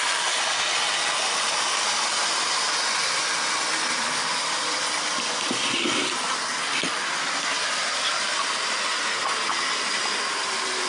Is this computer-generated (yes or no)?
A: no